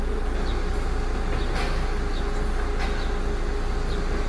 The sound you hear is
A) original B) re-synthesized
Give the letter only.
A